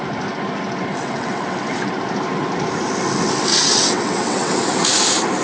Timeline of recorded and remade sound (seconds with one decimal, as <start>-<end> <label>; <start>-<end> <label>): 0.0-0.9 recorded; 0.9-1.9 remade; 1.9-3.5 recorded; 3.5-4.5 remade; 4.5-5.4 recorded